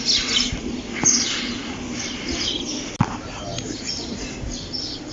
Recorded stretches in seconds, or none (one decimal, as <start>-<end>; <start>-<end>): 0.0-5.1